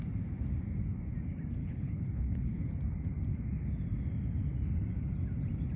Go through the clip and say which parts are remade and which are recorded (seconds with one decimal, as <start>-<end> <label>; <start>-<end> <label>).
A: 0.0-1.6 recorded; 1.6-2.7 remade; 2.7-5.8 recorded